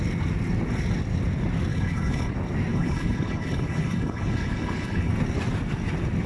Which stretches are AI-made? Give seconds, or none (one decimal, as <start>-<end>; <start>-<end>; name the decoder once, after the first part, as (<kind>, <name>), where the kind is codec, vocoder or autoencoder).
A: 1.7-2.3 (codec, HILCodec); 2.7-5.1